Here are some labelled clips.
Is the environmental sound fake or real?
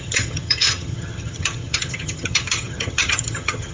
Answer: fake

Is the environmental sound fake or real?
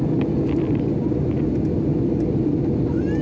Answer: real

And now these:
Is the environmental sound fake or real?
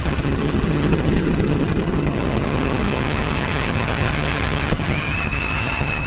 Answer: fake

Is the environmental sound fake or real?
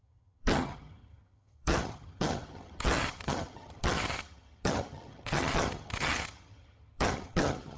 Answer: fake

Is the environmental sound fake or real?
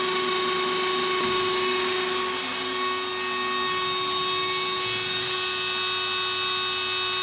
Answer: real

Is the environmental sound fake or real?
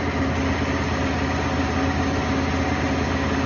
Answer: real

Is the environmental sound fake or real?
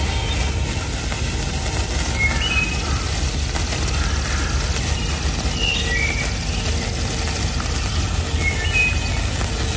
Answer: real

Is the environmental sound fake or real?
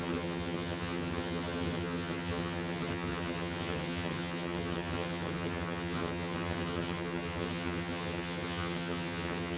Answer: fake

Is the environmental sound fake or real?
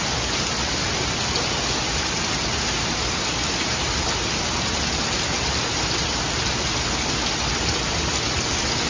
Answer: real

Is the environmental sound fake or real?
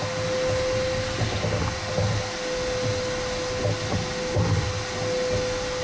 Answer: real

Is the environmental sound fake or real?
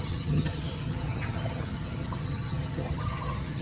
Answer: fake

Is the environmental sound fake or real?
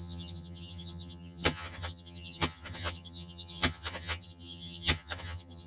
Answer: fake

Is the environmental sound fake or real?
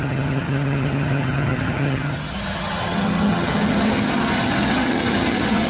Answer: fake